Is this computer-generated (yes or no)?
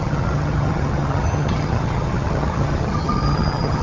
yes